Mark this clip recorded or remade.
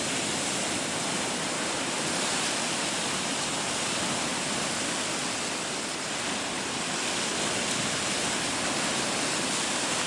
recorded